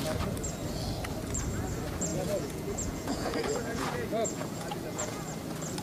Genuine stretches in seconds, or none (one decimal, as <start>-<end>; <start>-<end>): 0.0-2.1; 5.2-5.8